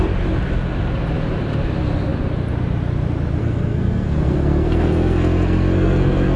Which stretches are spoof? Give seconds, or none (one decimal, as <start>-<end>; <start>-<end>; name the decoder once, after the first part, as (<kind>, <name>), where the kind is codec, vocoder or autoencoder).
3.4-6.4 (codec, SNAC)